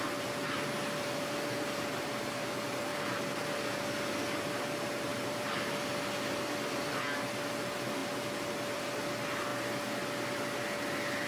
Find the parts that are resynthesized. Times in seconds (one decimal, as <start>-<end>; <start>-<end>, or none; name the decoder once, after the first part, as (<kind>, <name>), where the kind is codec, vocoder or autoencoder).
2.9-3.4 (vocoder, BigVGAN v2); 5.1-5.7